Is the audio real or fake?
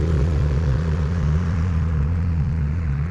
fake